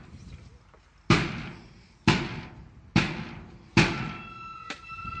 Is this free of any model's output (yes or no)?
yes